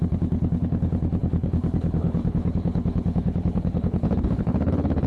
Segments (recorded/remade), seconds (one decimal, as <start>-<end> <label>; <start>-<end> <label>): 0.0-5.1 remade